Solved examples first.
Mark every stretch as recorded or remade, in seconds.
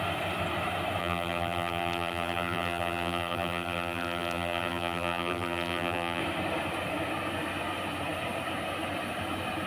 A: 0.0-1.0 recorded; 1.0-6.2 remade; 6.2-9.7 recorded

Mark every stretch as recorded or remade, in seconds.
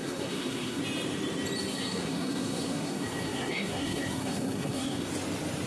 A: 0.0-0.8 remade; 0.8-1.7 recorded; 1.7-5.1 remade; 5.1-5.7 recorded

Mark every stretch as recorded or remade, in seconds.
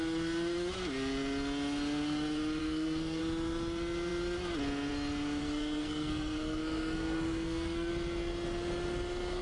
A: 0.0-2.6 recorded; 2.6-3.2 remade; 3.2-5.4 recorded; 5.4-7.9 remade; 7.9-9.4 recorded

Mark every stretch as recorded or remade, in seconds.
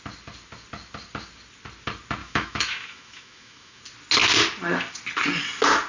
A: 0.0-2.2 recorded; 2.2-3.8 remade; 3.8-5.9 recorded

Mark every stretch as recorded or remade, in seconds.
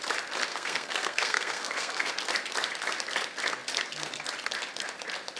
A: 0.0-0.5 recorded; 0.5-2.1 remade; 2.1-5.4 recorded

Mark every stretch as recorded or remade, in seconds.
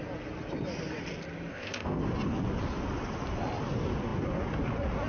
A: 0.0-1.5 recorded; 1.5-2.0 remade; 2.0-5.1 recorded